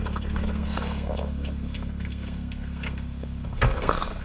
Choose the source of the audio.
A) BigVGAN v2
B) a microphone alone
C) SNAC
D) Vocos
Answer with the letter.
C